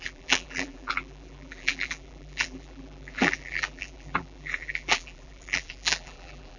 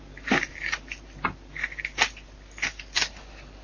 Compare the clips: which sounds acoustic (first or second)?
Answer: second